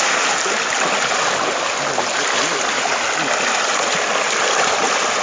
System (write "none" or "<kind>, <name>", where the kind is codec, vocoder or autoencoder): none